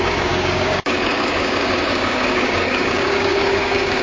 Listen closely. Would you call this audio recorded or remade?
remade